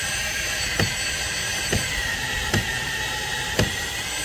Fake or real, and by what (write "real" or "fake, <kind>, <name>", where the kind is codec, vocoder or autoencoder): fake, vocoder, BigVGAN v2